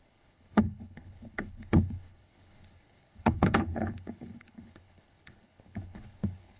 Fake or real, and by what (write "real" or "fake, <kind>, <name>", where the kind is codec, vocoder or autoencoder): fake, codec, HILCodec